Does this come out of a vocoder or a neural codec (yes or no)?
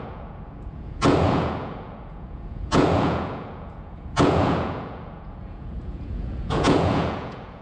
yes